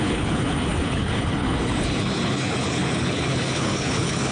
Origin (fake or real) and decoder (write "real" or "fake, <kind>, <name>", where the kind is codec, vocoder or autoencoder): fake, codec, HILCodec